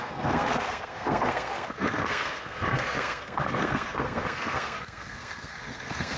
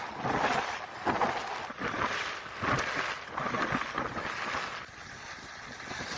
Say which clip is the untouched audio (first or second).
second